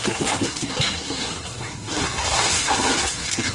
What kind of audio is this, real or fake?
fake